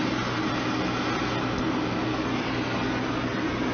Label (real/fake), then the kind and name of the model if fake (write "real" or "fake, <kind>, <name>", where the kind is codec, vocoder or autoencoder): real